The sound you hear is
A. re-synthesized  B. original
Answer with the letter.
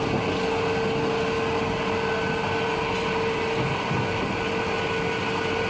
B